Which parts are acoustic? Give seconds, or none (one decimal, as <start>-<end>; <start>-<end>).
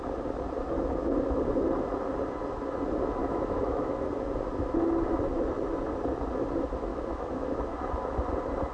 0.0-3.2; 4.1-6.9; 7.5-8.7